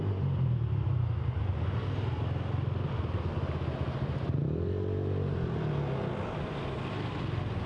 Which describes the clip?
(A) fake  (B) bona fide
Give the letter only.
B